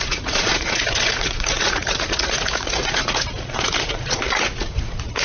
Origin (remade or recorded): remade